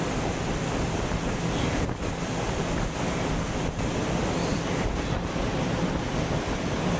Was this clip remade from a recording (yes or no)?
no